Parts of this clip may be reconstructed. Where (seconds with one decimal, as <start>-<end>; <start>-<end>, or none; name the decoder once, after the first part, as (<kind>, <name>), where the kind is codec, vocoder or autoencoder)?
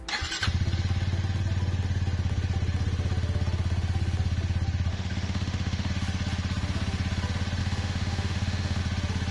4.9-5.9 (autoencoder, DAC-VAE); 7.6-8.8